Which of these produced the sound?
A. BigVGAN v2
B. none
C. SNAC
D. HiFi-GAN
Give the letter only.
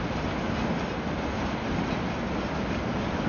B